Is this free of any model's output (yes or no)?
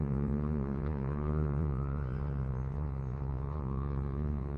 no